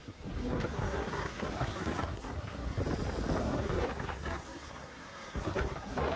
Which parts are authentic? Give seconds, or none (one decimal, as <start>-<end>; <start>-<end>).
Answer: 2.8-3.4